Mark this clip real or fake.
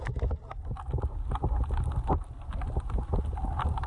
real